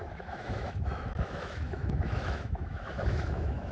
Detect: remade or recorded remade